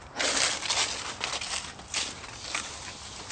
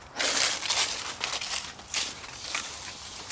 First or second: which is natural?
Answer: first